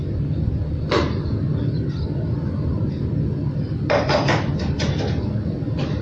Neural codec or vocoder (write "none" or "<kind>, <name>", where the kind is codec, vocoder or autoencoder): none